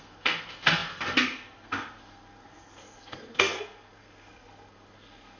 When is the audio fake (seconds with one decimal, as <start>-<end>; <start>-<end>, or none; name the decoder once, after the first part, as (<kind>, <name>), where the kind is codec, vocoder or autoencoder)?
0.0-5.4 (codec, SNAC)